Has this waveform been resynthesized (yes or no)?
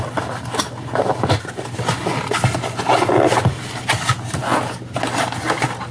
no